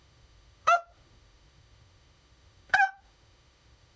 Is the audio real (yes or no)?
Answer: no